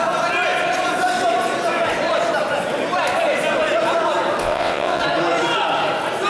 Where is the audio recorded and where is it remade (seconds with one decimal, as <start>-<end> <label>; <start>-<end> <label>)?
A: 0.0-4.4 recorded; 4.4-5.0 remade; 5.0-6.3 recorded